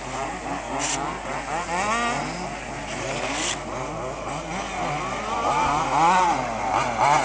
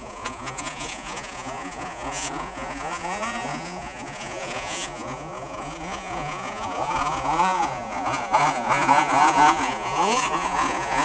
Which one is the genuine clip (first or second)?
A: first